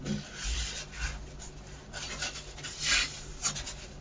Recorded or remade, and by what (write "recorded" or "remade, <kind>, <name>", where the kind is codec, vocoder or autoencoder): recorded